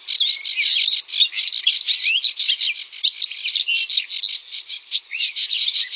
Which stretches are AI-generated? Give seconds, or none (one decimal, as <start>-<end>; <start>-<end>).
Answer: 4.4-6.0